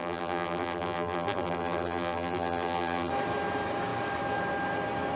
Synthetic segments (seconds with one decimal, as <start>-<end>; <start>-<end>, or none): 0.0-3.1